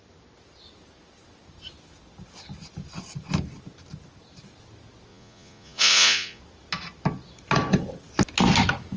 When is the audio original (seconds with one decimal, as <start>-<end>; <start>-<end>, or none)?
0.0-5.1; 6.4-9.0